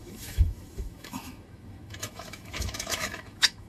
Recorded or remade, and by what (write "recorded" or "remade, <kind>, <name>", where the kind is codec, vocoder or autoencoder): remade, autoencoder, DAC-VAE